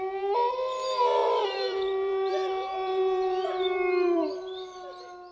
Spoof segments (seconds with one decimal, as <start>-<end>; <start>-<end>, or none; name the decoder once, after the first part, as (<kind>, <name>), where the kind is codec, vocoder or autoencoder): 1.2-4.4 (vocoder, BigVGAN v2)